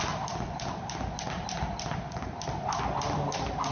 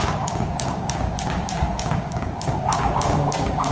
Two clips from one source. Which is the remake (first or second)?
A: second